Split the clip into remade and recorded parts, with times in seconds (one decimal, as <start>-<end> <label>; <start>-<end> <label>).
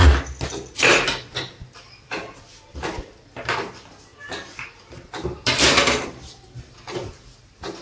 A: 0.0-7.8 remade